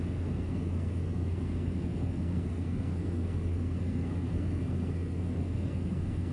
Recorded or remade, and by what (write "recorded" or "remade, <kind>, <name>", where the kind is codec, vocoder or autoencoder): remade, codec, SNAC